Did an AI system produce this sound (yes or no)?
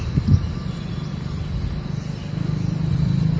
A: no